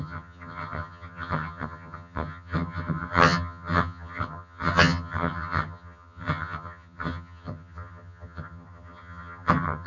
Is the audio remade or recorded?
remade